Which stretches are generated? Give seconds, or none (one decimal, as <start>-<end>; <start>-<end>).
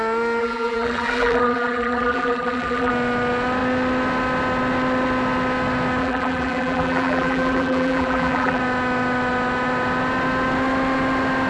0.4-2.9; 6.0-8.6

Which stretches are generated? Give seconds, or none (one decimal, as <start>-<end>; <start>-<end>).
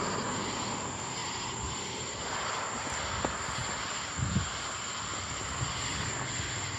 1.2-2.3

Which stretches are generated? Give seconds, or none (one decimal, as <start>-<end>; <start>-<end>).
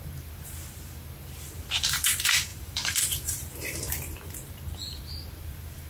0.0-5.9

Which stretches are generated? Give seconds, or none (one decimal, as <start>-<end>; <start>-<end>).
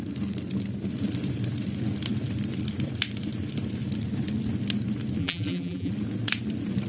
5.2-5.9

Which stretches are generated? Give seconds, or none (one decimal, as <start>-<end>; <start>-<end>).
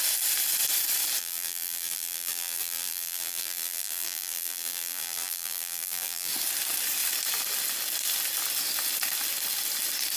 1.2-6.3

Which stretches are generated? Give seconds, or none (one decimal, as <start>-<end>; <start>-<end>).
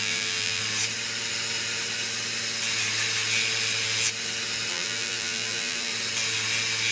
0.0-0.6; 4.7-5.9